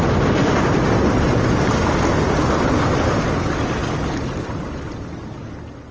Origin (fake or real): real